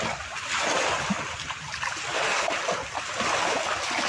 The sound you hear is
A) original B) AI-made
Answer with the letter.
A